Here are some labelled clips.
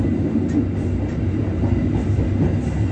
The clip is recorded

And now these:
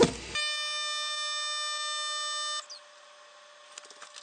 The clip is recorded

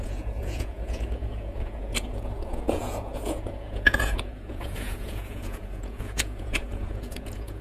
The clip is remade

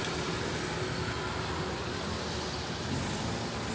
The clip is recorded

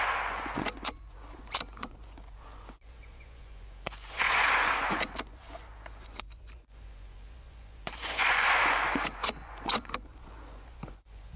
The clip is remade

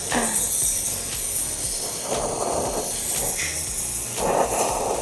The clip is recorded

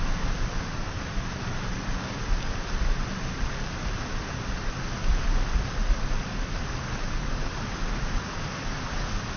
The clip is recorded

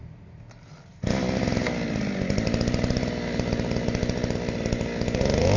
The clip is recorded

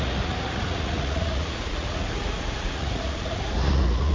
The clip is remade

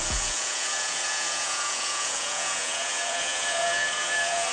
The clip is remade